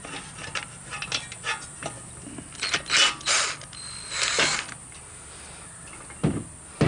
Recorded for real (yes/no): yes